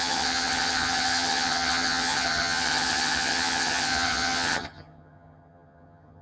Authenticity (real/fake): fake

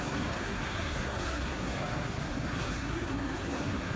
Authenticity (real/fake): fake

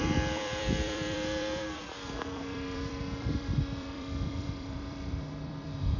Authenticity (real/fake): fake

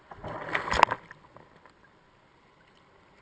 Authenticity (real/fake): real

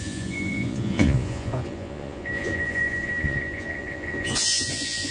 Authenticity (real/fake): fake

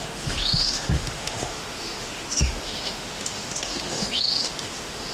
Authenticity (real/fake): fake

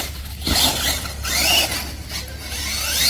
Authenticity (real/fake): real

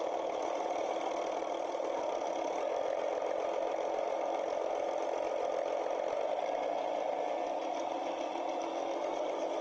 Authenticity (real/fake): real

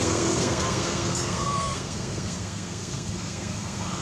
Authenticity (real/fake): fake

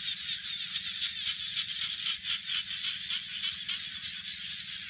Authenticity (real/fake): fake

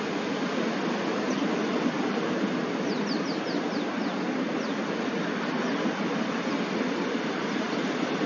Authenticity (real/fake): real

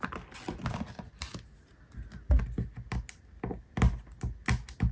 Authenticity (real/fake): real